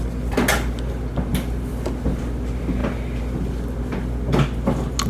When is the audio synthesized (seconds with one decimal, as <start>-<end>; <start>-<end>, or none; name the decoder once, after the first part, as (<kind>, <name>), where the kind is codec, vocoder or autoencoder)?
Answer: none